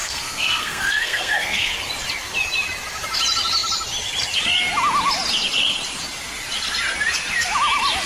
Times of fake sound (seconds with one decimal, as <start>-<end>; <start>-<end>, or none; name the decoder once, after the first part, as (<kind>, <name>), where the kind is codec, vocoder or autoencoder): 0.0-1.7 (codec, SNAC)

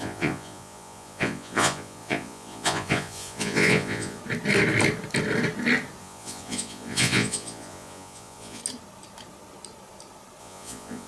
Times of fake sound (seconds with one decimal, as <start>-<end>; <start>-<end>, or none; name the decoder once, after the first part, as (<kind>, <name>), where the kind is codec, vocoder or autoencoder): 0.0-4.2 (vocoder, Vocos); 6.0-8.6; 10.4-11.1

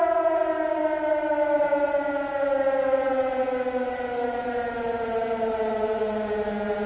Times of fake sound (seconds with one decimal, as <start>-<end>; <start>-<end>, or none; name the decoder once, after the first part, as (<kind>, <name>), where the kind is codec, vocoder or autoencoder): 0.0-0.8 (vocoder, Vocos); 1.6-6.9

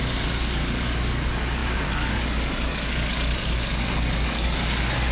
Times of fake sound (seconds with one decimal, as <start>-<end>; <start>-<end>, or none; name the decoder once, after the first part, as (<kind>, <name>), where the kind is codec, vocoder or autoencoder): 0.0-5.1 (codec, DAC)

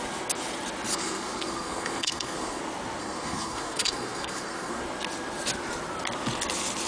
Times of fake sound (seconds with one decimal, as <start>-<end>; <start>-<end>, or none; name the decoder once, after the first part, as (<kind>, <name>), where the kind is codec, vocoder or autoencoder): 0.9-2.6 (codec, SNAC); 3.0-4.8

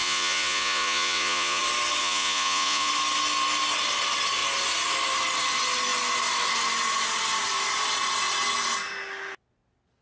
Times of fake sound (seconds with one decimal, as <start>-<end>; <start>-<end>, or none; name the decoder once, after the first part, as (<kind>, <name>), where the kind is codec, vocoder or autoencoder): 0.0-1.6 (vocoder, Vocos); 2.0-2.9